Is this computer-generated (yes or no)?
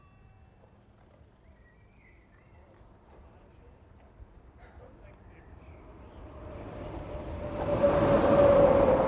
yes